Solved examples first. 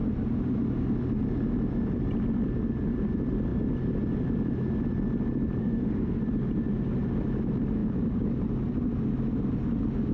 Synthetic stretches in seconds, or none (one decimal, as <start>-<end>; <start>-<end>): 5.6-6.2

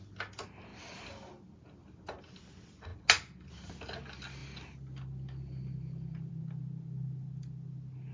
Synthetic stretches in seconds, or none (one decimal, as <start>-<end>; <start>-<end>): none

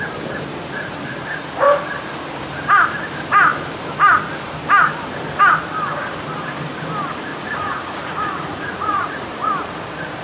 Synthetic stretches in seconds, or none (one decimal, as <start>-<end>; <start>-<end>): 7.3-9.5

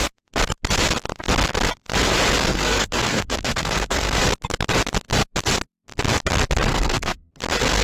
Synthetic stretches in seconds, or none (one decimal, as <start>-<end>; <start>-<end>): 2.5-4.2; 6.7-7.3

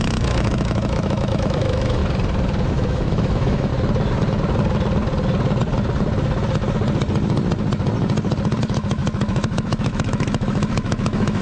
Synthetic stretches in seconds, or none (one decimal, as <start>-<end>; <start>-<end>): 0.0-2.0; 2.7-3.7; 8.6-11.4

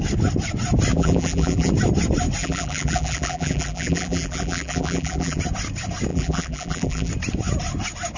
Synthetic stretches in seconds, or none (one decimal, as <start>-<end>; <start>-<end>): 0.9-1.7; 2.4-5.4; 6.1-7.1

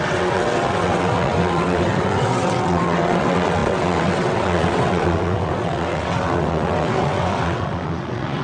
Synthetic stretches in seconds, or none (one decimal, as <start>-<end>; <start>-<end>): 0.0-8.4

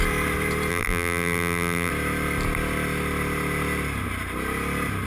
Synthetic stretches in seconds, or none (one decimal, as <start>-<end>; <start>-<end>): 0.7-1.9